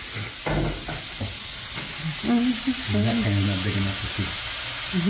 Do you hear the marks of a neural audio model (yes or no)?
no